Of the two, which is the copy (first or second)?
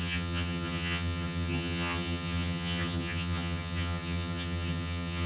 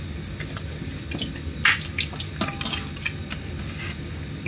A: first